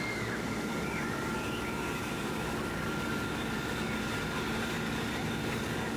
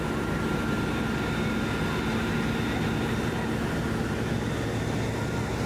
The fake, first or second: first